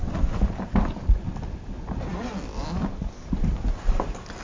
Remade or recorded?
recorded